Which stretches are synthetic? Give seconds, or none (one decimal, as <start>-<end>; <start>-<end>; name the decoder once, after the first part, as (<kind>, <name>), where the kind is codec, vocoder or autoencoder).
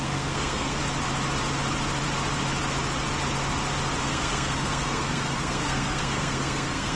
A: 0.0-0.8 (codec, SNAC); 4.0-7.0